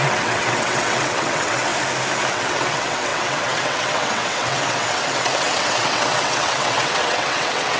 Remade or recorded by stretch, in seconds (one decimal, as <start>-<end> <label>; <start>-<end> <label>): 0.0-1.7 remade; 1.7-2.3 recorded; 2.3-7.8 remade